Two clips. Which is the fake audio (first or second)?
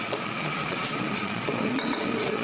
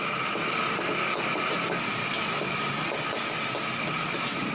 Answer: first